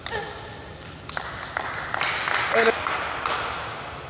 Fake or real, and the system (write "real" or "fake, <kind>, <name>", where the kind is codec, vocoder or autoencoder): real